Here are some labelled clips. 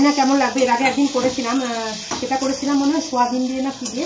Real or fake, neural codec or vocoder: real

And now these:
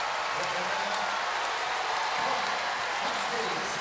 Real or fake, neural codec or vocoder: real